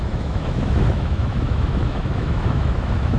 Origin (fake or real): fake